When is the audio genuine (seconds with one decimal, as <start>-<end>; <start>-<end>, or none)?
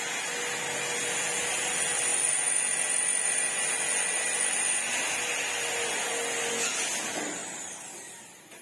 0.0-7.4; 7.9-8.6